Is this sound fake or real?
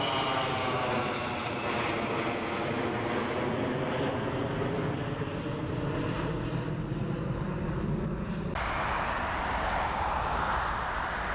real